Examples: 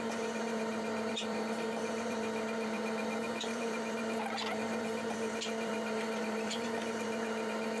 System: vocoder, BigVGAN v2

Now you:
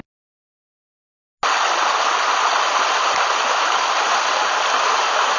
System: none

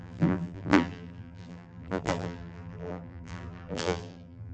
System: vocoder, BigVGAN v2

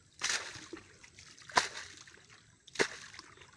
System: none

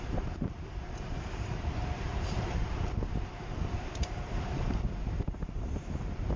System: vocoder, BigVGAN v2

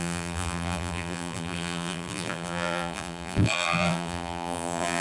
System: vocoder, BigVGAN v2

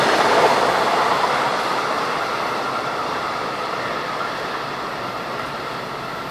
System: vocoder, BigVGAN v2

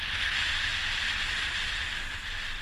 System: none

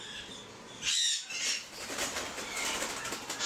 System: none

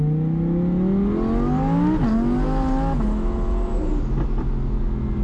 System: none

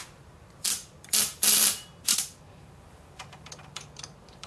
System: vocoder, BigVGAN v2